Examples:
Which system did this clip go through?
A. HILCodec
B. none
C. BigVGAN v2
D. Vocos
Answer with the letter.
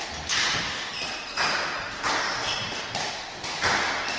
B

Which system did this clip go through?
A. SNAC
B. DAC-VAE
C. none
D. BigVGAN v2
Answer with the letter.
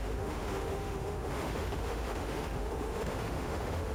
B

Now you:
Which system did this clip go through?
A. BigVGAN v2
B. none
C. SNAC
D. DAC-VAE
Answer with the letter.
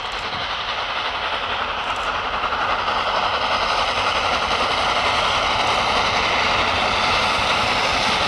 B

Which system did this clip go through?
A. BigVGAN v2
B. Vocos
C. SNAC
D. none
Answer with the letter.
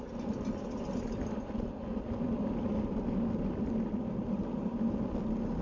D